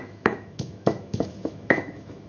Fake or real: fake